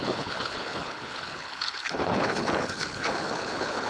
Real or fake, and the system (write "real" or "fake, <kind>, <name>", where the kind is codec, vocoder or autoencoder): fake, codec, HILCodec